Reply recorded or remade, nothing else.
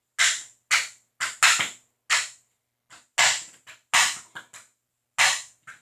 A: recorded